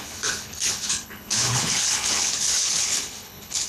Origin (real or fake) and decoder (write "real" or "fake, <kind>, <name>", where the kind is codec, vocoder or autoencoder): fake, codec, HILCodec